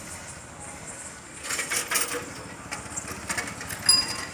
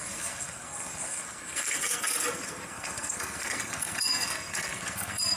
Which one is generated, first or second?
second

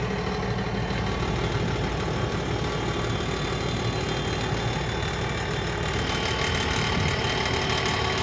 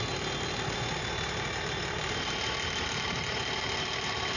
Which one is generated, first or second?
second